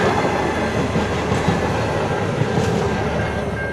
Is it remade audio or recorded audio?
recorded